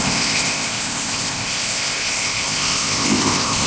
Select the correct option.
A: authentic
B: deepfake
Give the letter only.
B